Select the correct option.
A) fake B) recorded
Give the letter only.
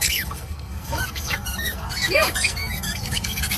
A